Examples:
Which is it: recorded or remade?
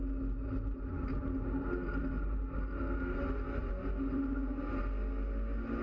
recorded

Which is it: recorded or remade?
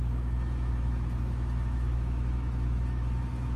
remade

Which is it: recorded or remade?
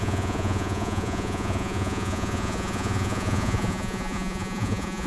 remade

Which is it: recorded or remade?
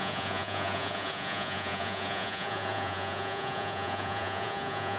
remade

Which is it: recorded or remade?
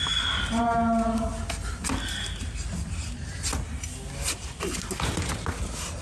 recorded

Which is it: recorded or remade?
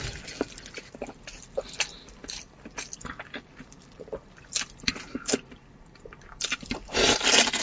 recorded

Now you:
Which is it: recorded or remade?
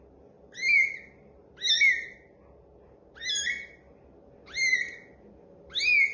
recorded